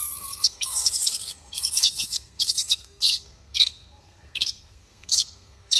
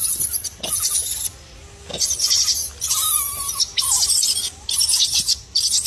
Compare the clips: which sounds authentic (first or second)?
second